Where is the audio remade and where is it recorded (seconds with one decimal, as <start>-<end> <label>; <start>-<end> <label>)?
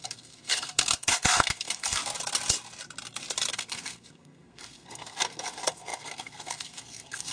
0.0-2.0 remade; 2.0-3.5 recorded; 3.5-7.3 remade